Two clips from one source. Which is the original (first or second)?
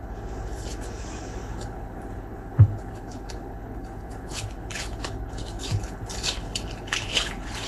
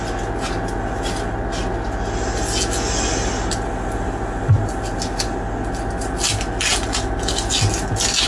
second